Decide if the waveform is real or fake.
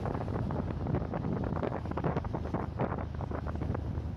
real